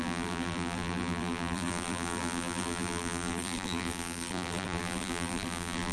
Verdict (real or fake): fake